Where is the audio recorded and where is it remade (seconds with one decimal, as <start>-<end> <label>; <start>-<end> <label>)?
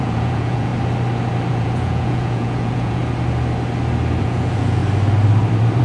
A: 0.0-0.7 remade; 0.7-1.5 recorded; 1.5-3.0 remade; 3.0-4.2 recorded; 4.2-4.8 remade; 4.8-5.8 recorded